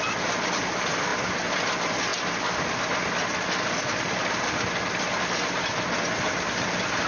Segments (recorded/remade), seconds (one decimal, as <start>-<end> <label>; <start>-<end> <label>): 0.0-7.1 recorded